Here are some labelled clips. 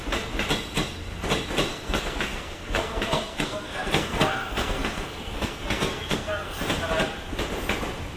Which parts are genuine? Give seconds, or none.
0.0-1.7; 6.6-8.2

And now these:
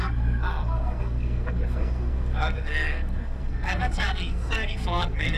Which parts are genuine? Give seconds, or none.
none

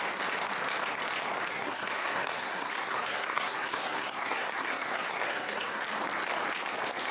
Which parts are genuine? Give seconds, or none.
0.0-1.5; 5.8-7.1

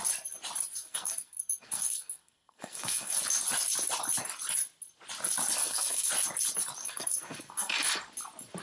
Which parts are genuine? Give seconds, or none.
0.0-0.8; 3.2-5.6; 6.1-6.8; 7.9-8.6

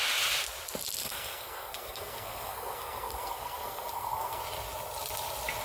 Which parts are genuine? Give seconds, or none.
0.0-1.0; 4.4-5.6

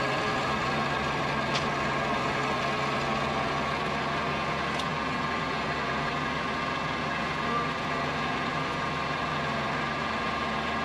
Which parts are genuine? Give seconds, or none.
0.0-10.8